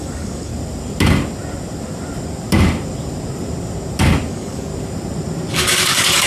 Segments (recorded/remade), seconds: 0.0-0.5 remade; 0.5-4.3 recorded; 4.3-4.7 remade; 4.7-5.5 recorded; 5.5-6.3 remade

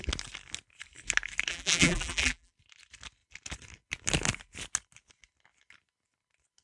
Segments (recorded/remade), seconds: 0.0-1.5 recorded; 1.5-2.5 remade; 2.5-6.6 recorded

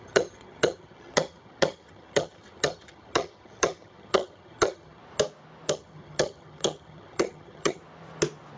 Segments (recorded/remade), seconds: 0.0-5.0 remade; 5.0-5.7 recorded; 5.7-7.8 remade; 7.8-8.6 recorded

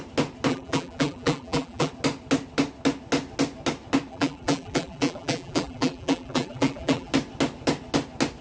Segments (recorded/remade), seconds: 0.0-0.5 recorded; 0.5-1.9 remade; 1.9-4.1 recorded; 4.1-7.1 remade; 7.1-8.4 recorded